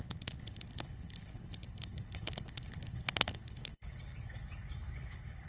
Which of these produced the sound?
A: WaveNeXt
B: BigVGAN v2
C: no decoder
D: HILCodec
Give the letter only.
D